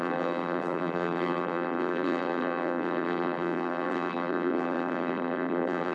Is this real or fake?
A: fake